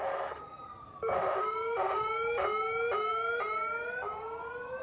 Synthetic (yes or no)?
no